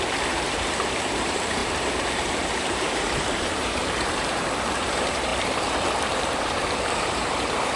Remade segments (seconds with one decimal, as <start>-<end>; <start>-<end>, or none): 0.0-7.8